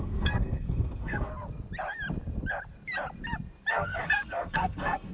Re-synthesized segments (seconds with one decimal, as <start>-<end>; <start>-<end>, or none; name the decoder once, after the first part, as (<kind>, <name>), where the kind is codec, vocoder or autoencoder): 0.0-1.3 (codec, SNAC); 3.7-5.1